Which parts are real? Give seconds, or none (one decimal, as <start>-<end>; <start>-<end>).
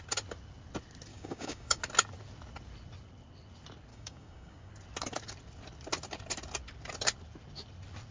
0.0-1.1; 1.8-3.9; 4.7-8.1